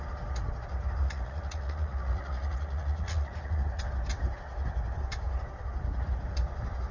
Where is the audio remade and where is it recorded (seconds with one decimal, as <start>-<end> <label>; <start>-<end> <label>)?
0.0-1.0 recorded; 1.0-3.8 remade; 3.8-6.9 recorded

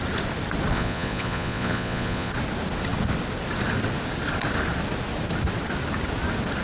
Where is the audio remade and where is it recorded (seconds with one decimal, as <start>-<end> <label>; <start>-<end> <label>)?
0.0-0.7 recorded; 0.7-2.3 remade; 2.3-6.6 recorded

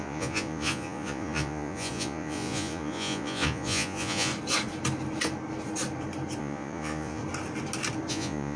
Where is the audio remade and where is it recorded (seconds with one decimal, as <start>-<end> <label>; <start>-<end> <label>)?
0.0-4.3 remade; 4.3-6.4 recorded; 6.4-7.2 remade; 7.2-8.1 recorded; 8.1-8.6 remade